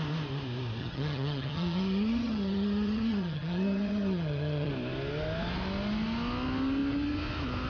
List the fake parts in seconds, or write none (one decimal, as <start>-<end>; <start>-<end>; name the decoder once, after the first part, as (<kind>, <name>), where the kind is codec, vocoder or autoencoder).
0.8-4.7 (vocoder, HiFi-GAN)